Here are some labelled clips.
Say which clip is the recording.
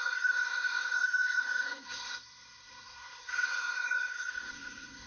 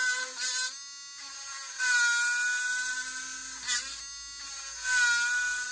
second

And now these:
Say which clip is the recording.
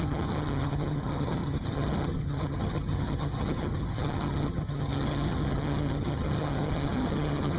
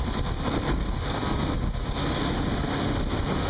second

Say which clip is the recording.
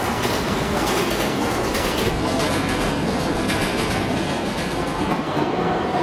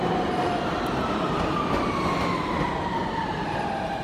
second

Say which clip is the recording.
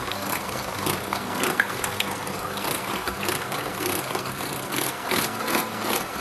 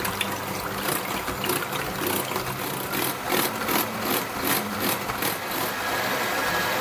second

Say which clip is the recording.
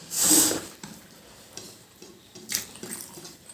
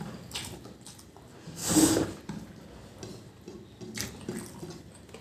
second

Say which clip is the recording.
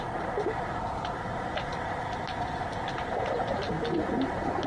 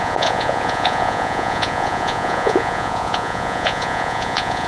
first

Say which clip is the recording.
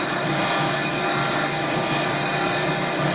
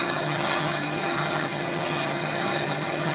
first